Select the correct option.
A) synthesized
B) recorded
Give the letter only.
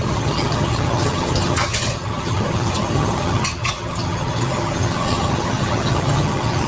A